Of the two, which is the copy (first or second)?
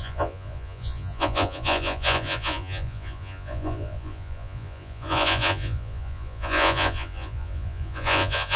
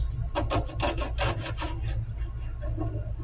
first